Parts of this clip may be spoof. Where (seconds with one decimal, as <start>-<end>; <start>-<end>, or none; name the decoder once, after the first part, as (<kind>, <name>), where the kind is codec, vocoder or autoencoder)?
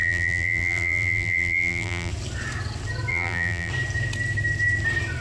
0.0-2.1 (vocoder, BigVGAN v2); 3.1-3.7